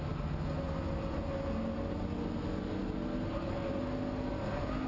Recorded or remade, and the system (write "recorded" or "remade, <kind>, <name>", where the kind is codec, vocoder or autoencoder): recorded